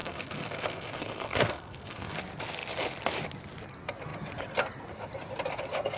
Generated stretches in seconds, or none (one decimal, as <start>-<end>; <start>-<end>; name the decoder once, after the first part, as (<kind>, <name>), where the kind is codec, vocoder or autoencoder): 0.0-2.2 (codec, SNAC)